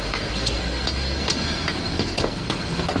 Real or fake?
fake